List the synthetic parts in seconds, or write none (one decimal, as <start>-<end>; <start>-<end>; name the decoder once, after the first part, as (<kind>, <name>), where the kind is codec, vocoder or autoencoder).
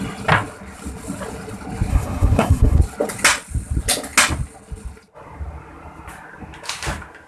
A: 1.9-2.8 (codec, SNAC)